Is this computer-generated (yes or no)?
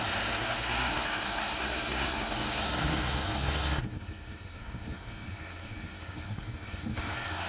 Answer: yes